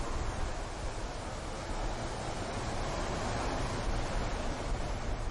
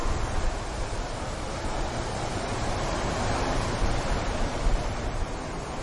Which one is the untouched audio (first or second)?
first